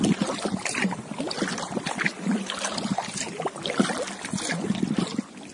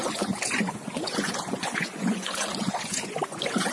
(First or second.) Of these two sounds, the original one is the first